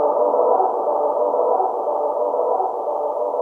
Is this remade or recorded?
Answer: recorded